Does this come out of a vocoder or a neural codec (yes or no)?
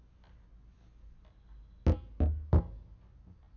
no